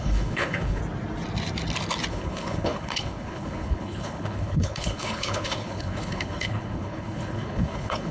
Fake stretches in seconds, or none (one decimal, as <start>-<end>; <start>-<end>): 0.0-0.8; 2.1-8.1